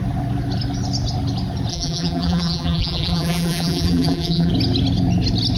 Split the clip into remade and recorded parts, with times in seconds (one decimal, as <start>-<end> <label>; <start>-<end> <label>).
0.0-1.7 recorded; 1.7-4.5 remade; 4.5-5.6 recorded